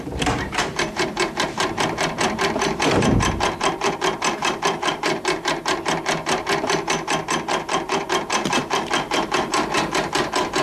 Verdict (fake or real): fake